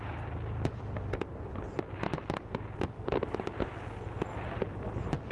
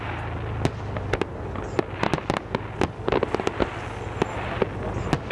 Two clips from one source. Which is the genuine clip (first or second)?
second